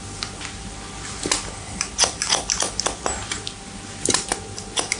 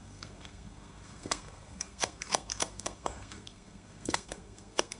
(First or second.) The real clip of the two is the first